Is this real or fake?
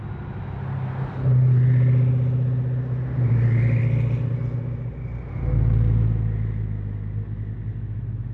real